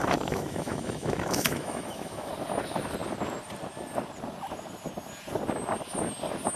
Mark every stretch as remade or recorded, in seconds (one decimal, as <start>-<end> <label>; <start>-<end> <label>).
0.0-2.3 remade; 2.3-6.6 recorded

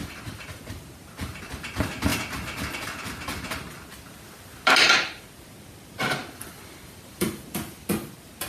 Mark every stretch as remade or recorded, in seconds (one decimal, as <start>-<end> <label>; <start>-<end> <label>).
0.0-0.5 remade; 0.5-6.2 recorded; 6.2-7.9 remade; 7.9-8.5 recorded

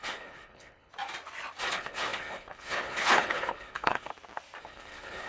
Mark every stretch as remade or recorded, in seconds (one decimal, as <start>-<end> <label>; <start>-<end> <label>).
0.0-0.9 remade; 0.9-1.7 recorded; 1.7-4.1 remade; 4.1-4.6 recorded; 4.6-5.3 remade

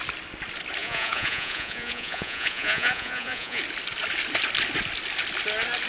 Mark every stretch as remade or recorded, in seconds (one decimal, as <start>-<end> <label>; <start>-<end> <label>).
0.0-0.8 recorded; 0.8-3.6 remade; 3.6-5.9 recorded

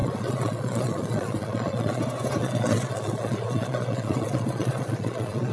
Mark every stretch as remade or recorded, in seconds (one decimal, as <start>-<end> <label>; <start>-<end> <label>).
0.0-2.0 remade; 2.0-2.4 recorded; 2.4-5.5 remade

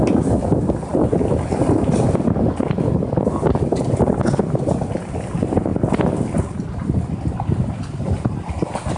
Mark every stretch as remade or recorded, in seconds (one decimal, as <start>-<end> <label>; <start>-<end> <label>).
0.0-9.0 recorded